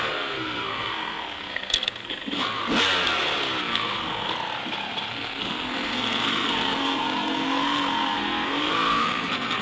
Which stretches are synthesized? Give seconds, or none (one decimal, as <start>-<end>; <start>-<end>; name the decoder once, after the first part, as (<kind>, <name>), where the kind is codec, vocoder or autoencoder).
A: 0.0-2.6 (codec, SNAC); 3.6-4.3; 5.1-9.6